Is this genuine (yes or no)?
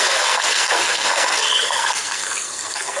no